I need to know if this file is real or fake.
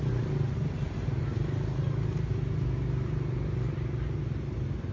real